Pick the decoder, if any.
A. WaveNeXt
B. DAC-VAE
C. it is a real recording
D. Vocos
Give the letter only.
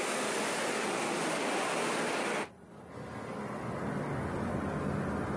C